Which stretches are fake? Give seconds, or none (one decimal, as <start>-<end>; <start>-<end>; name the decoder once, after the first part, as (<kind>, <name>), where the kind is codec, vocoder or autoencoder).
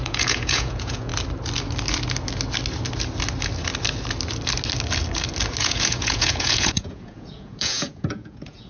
0.0-1.1 (vocoder, Vocos); 5.6-8.7